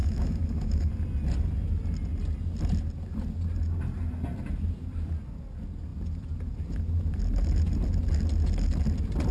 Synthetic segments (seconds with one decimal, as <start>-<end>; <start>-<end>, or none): 0.0-0.9